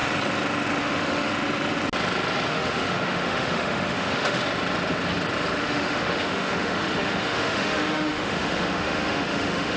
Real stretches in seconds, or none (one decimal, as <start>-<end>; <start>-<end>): 0.0-0.8; 1.3-2.5; 4.4-5.6